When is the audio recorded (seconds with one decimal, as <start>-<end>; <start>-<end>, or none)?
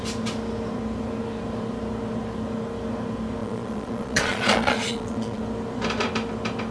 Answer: 0.0-3.4; 5.4-6.7